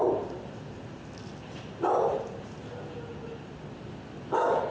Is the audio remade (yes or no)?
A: no